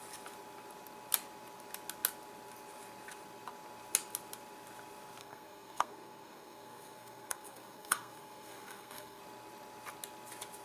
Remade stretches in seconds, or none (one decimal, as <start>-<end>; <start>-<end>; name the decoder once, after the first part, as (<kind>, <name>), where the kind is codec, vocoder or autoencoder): 5.2-9.2 (codec, SNAC)